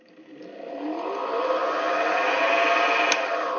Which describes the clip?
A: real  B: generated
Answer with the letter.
A